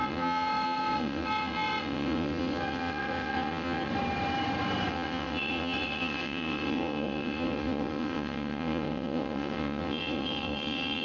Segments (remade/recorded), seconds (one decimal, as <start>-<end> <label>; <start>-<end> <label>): 0.0-3.9 remade; 3.9-4.9 recorded; 4.9-11.0 remade

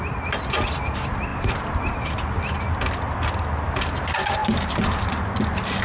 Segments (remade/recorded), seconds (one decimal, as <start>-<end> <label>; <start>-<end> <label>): 0.0-1.3 recorded; 1.3-2.6 remade; 2.6-4.4 recorded; 4.4-5.1 remade; 5.1-5.8 recorded

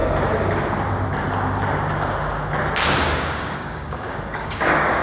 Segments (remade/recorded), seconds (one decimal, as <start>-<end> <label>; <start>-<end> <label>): 0.0-3.0 recorded; 3.0-5.0 remade

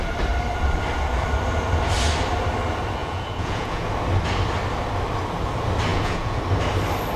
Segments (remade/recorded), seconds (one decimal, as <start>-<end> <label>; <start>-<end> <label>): 0.0-3.0 recorded; 3.0-3.9 remade; 3.9-5.9 recorded; 5.9-6.4 remade; 6.4-7.2 recorded